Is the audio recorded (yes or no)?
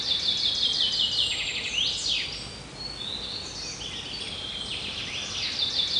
yes